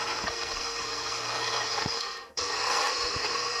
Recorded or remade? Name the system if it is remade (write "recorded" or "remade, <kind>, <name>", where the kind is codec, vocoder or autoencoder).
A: remade, codec, SNAC